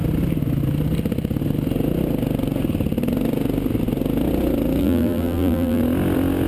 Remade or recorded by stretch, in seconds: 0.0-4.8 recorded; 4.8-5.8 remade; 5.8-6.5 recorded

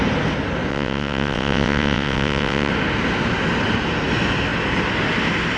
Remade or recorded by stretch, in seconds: 0.0-0.7 recorded; 0.7-2.7 remade; 2.7-5.6 recorded

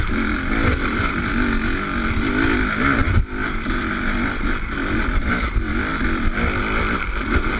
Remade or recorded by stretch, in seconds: 0.0-0.7 recorded; 0.7-1.3 remade; 1.3-3.0 recorded; 3.0-5.0 remade; 5.0-7.6 recorded

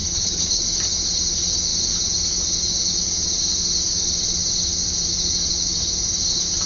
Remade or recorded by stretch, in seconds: 0.0-0.6 remade; 0.6-6.7 recorded

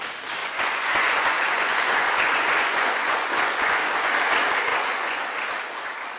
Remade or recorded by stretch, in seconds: 0.0-0.4 recorded; 0.4-4.1 remade; 4.1-4.7 recorded; 4.7-5.2 remade; 5.2-6.2 recorded